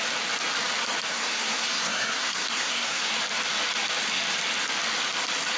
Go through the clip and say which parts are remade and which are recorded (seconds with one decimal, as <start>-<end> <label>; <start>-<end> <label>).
0.0-1.1 recorded; 1.1-3.1 remade; 3.1-5.6 recorded